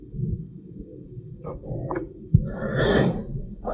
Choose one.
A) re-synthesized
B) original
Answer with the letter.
A